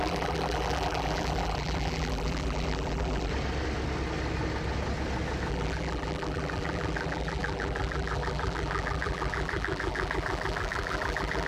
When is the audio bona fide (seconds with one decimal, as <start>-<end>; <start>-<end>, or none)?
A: 3.3-5.5